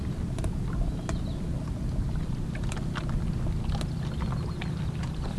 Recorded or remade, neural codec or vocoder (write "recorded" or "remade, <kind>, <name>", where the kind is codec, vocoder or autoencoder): recorded